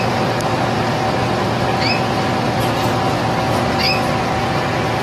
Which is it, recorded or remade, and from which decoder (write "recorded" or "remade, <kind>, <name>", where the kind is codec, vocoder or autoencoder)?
recorded